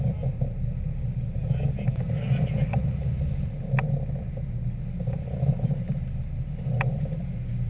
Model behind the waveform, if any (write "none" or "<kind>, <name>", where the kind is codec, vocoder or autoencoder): none